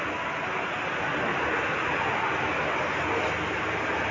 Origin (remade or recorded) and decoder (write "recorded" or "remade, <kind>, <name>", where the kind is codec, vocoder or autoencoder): recorded